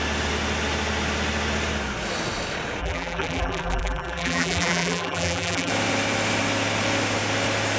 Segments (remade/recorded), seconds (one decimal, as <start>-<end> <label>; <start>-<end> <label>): 0.0-2.8 recorded; 2.8-5.7 remade; 5.7-7.8 recorded

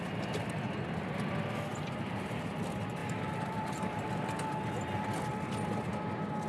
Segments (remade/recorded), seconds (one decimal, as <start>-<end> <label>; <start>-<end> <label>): 0.0-1.7 recorded; 1.7-2.5 remade; 2.5-3.0 recorded; 3.0-4.1 remade; 4.1-6.5 recorded

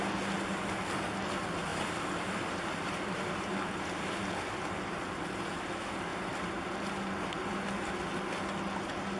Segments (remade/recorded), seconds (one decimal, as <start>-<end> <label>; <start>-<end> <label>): 0.0-1.7 recorded; 1.7-3.7 remade; 3.7-6.1 recorded; 6.1-7.9 remade; 7.9-9.2 recorded

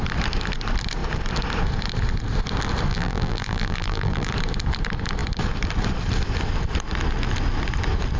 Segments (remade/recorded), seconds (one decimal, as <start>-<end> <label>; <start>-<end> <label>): 0.0-2.9 recorded; 2.9-4.3 remade; 4.3-8.2 recorded

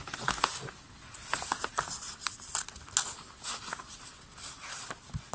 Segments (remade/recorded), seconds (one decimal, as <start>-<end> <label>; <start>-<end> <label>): 0.0-5.3 recorded

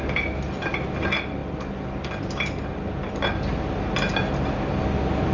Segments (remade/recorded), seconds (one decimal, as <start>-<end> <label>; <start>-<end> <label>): 0.0-5.3 recorded

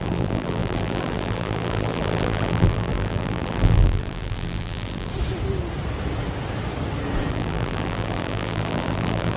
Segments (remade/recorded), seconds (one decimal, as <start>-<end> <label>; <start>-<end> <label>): 0.0-5.1 remade; 5.1-7.3 recorded; 7.3-9.4 remade

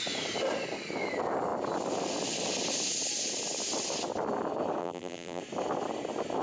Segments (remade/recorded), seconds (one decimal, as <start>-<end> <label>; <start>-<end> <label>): 0.0-4.8 recorded; 4.8-5.4 remade; 5.4-6.4 recorded